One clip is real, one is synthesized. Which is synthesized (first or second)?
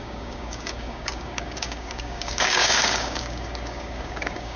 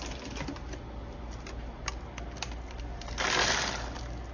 first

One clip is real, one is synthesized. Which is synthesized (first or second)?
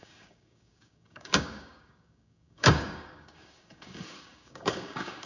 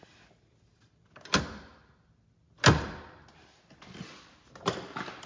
first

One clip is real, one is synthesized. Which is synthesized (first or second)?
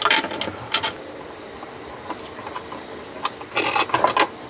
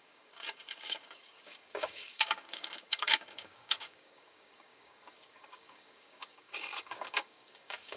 second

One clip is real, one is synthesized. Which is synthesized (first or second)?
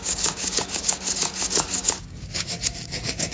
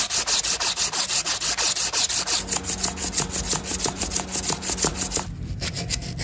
first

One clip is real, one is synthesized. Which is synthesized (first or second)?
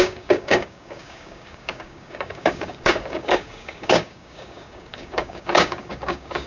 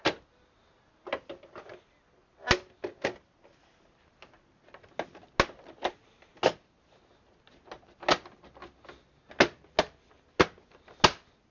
first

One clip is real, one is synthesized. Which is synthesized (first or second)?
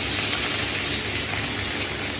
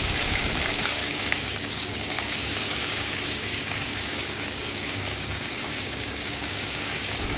second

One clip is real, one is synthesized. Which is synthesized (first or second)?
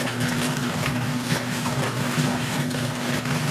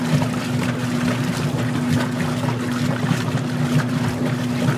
first